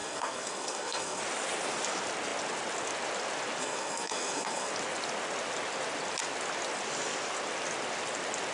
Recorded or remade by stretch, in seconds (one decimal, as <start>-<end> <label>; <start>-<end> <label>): 0.0-1.2 remade; 1.2-3.6 recorded; 3.6-4.7 remade; 4.7-8.5 recorded